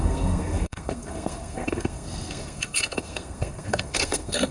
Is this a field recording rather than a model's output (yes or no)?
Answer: no